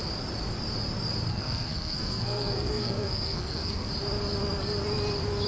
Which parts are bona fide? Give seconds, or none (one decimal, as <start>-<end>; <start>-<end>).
0.0-1.3; 3.9-5.5